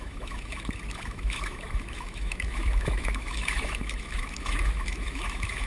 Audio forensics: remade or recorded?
remade